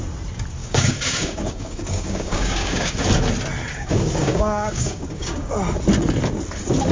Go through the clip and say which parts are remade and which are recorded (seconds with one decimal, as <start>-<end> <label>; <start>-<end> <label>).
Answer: 0.0-0.6 recorded; 0.6-3.0 remade; 3.0-3.7 recorded; 3.7-5.5 remade; 5.5-6.9 recorded